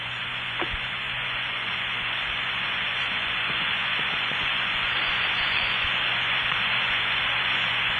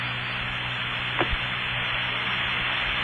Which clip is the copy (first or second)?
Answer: first